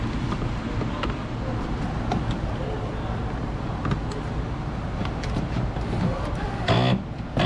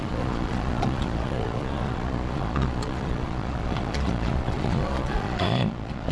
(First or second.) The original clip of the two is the first